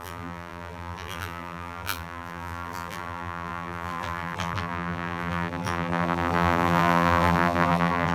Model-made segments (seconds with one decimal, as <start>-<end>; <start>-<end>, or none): 0.0-8.1